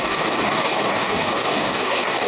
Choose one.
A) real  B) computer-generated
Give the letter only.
B